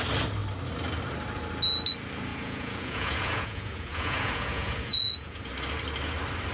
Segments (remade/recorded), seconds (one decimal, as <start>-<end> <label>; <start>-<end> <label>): 0.0-2.3 recorded; 2.3-5.5 remade; 5.5-6.5 recorded